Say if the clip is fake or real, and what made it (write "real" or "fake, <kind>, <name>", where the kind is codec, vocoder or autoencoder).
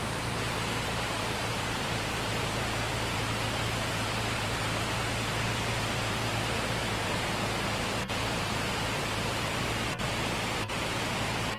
fake, vocoder, BigVGAN v2